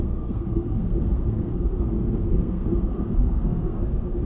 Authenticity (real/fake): fake